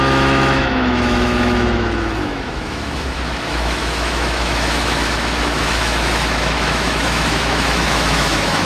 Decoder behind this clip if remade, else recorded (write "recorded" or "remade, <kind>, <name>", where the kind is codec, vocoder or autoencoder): remade, autoencoder, DAC-VAE